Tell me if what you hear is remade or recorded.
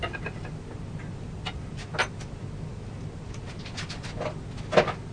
recorded